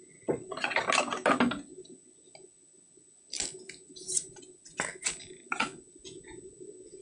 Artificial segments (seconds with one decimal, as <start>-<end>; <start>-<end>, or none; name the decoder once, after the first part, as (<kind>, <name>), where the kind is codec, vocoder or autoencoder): none